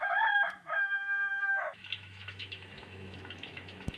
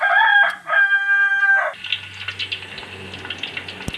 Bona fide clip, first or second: second